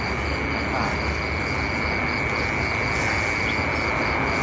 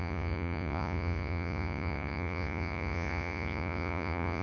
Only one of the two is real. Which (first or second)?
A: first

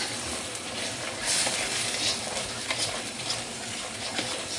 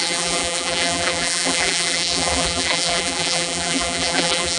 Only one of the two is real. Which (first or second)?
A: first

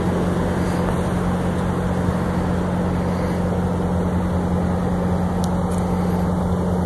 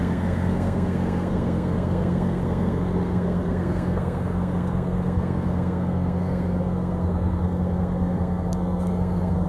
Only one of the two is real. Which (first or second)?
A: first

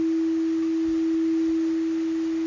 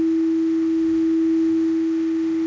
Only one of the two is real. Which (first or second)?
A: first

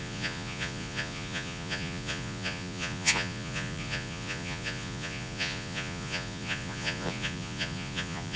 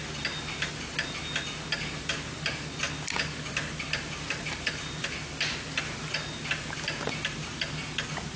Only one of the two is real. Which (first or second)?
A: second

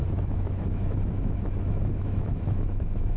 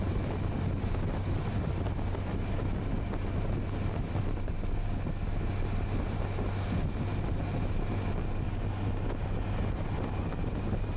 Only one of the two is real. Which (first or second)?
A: second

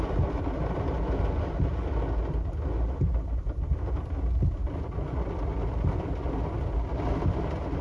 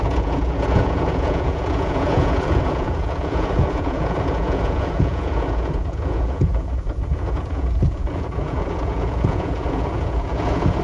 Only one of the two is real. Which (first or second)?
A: first